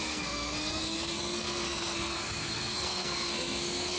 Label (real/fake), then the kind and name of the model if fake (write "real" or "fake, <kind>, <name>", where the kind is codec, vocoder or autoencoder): fake, codec, SNAC